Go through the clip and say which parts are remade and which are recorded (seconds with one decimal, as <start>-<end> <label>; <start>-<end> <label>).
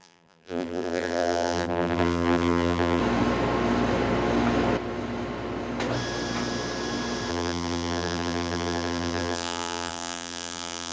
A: 0.0-3.0 remade; 3.0-7.3 recorded; 7.3-10.9 remade